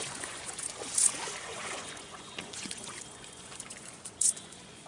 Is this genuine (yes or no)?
no